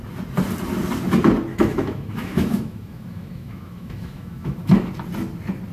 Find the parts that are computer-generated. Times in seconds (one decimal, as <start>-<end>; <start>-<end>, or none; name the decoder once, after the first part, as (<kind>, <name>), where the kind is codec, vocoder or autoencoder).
1.5-4.9 (autoencoder, DAC-VAE)